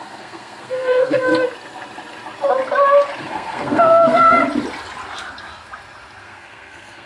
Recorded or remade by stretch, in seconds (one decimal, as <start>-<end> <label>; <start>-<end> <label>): 0.0-1.3 remade; 1.3-3.2 recorded; 3.2-4.4 remade; 4.4-6.2 recorded; 6.2-7.1 remade